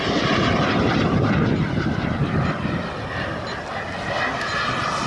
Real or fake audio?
real